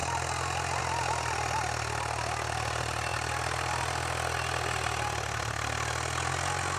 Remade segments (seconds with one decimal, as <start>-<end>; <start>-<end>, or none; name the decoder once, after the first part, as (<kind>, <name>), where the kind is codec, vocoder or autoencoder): none